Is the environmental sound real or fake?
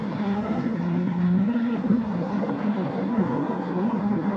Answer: fake